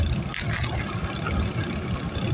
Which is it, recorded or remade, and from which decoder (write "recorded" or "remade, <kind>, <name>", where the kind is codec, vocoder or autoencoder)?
recorded